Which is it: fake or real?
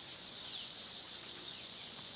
fake